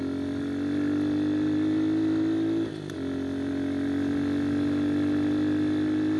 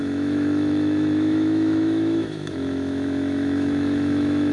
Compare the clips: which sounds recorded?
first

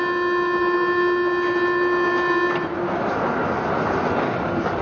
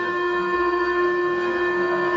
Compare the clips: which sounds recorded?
first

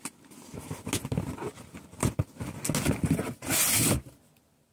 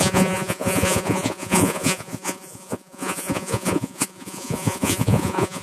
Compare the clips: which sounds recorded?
first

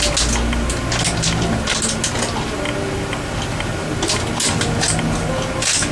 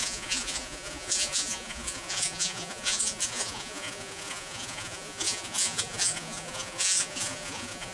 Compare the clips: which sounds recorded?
first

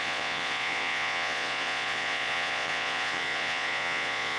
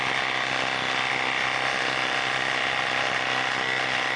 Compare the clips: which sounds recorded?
second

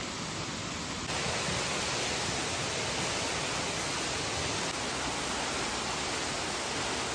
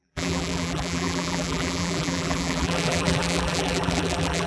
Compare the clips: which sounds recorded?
first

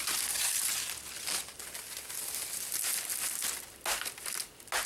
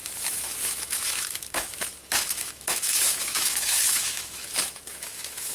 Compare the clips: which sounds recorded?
first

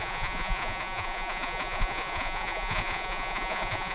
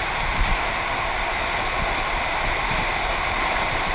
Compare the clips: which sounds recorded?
second